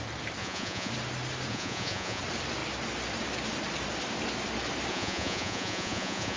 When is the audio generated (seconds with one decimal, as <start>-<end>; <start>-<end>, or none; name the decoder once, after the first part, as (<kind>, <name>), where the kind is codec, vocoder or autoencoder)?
0.4-0.9 (vocoder, Vocos); 1.5-2.2; 4.9-6.4